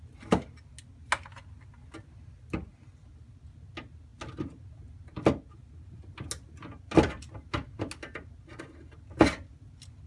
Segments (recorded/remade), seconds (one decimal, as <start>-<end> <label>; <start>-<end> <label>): 0.0-10.1 recorded